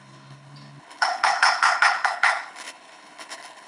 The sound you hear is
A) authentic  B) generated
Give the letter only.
B